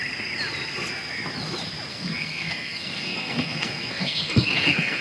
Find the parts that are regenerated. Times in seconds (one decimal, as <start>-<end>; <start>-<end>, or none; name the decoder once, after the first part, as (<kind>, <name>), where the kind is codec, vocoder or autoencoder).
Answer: 1.9-5.0 (codec, SNAC)